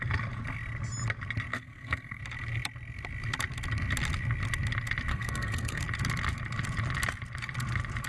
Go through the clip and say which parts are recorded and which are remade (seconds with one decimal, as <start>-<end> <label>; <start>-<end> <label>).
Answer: 0.0-1.5 recorded; 1.5-2.2 remade; 2.2-5.1 recorded; 5.1-5.8 remade; 5.8-8.1 recorded